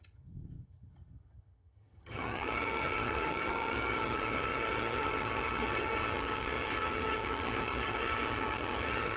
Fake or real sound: fake